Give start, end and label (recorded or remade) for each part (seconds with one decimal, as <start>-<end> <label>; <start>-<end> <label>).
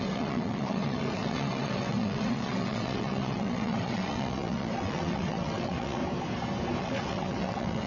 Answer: 0.0-6.0 remade; 6.0-6.8 recorded; 6.8-7.9 remade